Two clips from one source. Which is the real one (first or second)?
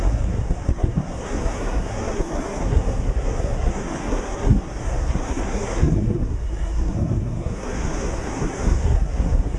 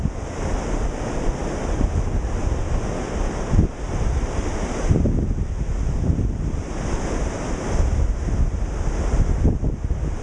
second